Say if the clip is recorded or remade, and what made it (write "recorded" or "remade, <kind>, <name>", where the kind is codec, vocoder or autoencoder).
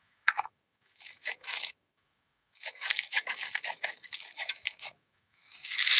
remade, autoencoder, DAC-VAE